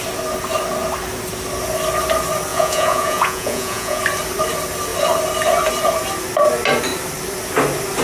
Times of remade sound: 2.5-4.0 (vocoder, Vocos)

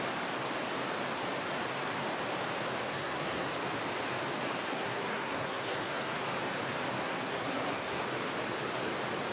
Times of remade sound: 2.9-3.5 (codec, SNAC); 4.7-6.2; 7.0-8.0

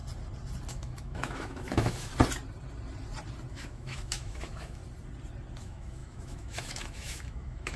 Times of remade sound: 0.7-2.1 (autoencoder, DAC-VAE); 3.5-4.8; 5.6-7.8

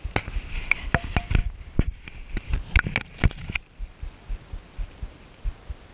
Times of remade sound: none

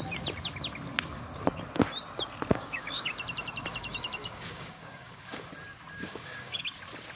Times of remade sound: 2.5-3.1 (codec, DAC); 4.2-5.5; 6.0-6.6

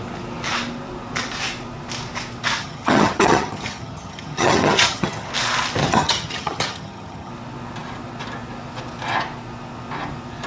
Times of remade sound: 2.6-5.3 (vocoder, HiFi-GAN); 5.8-7.3

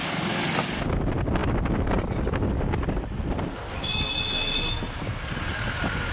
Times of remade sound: none